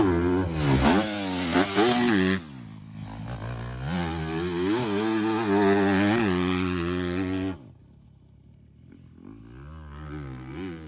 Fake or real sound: real